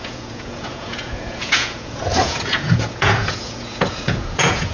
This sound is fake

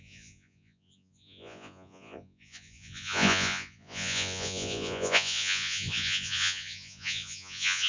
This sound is fake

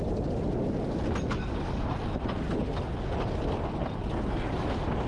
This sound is real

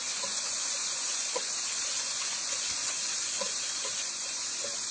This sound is fake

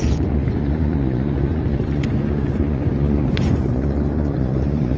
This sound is fake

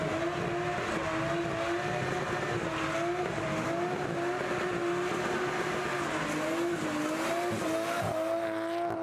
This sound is real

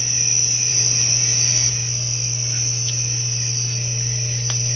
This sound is real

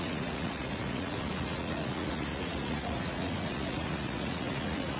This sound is fake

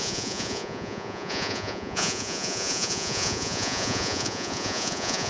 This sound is fake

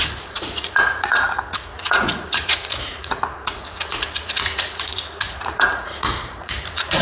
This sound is fake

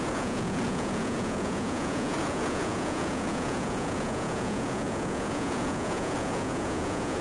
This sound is fake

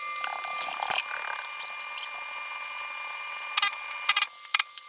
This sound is real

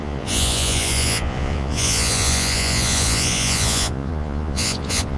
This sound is fake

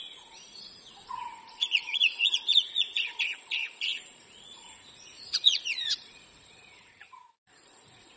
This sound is fake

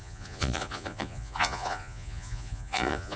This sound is fake